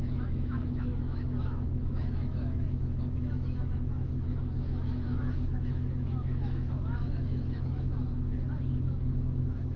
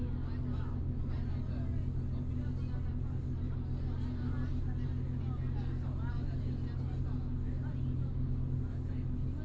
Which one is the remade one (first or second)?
first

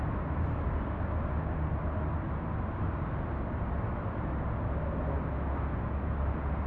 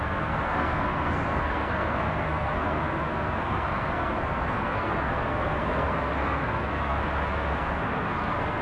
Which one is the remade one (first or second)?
second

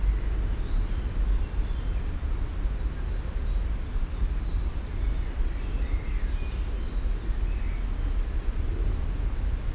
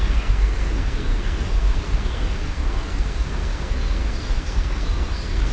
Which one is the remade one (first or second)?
second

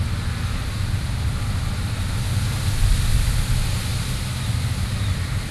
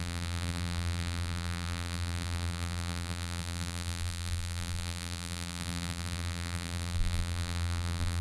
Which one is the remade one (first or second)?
second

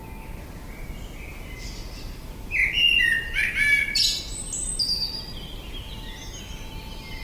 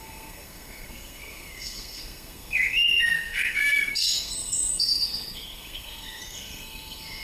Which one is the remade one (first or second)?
second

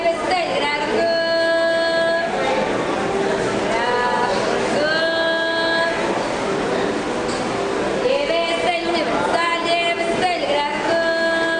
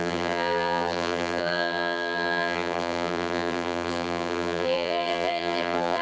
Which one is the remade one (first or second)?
second